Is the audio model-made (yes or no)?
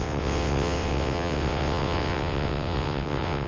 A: yes